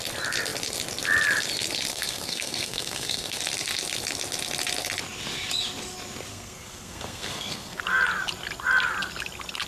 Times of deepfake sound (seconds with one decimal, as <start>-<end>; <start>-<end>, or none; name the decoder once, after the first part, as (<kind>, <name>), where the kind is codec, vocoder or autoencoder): 1.9-3.4 (codec, SNAC); 6.3-7.8